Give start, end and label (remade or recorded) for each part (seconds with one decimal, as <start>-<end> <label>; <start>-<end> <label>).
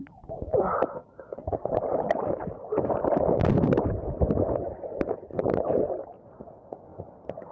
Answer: 0.0-1.0 recorded; 1.0-4.7 remade; 4.7-7.5 recorded